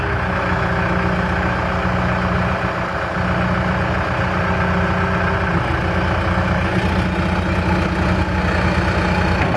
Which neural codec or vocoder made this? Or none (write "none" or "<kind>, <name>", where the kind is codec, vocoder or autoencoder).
none